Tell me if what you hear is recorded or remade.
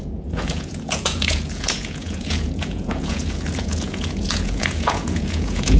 remade